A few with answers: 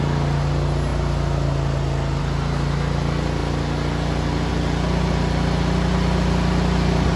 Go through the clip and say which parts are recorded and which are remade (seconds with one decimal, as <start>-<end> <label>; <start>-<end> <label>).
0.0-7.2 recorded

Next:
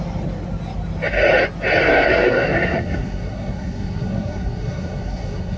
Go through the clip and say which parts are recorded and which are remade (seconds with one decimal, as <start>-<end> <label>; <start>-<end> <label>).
0.0-1.8 recorded; 1.8-5.6 remade

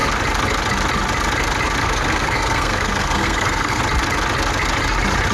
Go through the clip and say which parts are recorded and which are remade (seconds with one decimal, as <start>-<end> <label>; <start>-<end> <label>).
0.0-1.8 recorded; 1.8-3.8 remade; 3.8-5.3 recorded

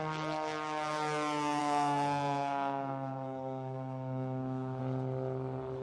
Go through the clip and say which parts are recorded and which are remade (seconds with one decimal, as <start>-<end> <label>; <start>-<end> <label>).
0.0-1.6 recorded; 1.6-4.8 remade; 4.8-5.8 recorded

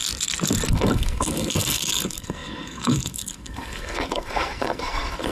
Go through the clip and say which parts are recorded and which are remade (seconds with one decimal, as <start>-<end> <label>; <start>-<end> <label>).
0.0-0.7 recorded; 0.7-5.3 remade